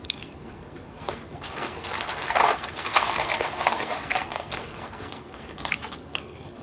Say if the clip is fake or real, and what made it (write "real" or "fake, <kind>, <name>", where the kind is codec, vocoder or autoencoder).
fake, codec, SNAC